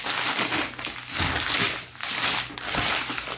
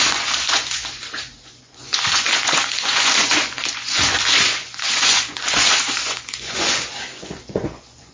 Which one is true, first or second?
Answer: first